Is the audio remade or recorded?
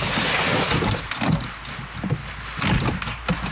recorded